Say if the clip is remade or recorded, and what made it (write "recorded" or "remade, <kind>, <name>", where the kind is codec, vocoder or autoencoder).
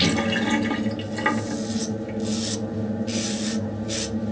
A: recorded